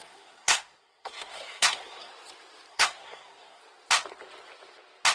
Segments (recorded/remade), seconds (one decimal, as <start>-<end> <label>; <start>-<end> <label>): 0.0-2.1 remade; 2.1-2.7 recorded; 2.7-3.6 remade; 3.6-5.1 recorded